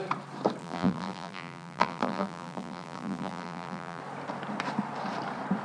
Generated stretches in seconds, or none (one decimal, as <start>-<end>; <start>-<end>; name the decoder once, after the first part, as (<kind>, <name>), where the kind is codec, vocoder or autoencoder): 0.6-4.0 (vocoder, BigVGAN v2)